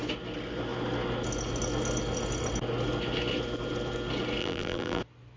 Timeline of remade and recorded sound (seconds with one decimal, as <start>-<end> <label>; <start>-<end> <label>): 0.0-4.4 recorded; 4.4-5.0 remade; 5.0-5.4 recorded

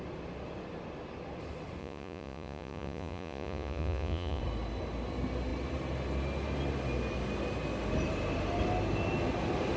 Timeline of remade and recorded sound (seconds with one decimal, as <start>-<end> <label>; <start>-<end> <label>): 0.0-1.8 recorded; 1.8-4.4 remade; 4.4-9.8 recorded

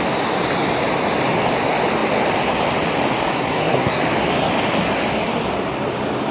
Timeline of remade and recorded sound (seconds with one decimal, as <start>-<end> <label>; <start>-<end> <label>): 0.0-3.4 recorded; 3.4-4.0 remade; 4.0-6.3 recorded